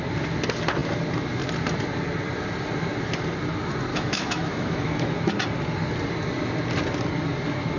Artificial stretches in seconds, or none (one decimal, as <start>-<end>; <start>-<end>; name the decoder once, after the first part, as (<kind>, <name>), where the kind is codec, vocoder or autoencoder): 3.9-5.3 (autoencoder, DAC-VAE)